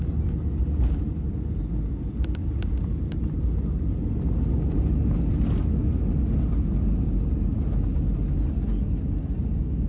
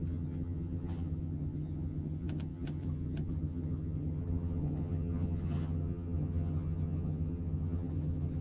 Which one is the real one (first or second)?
first